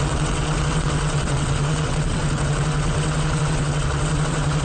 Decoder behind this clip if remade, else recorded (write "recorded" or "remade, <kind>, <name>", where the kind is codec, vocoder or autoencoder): remade, vocoder, WaveNeXt